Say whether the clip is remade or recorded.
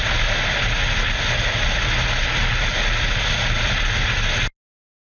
recorded